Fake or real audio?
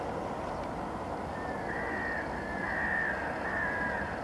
real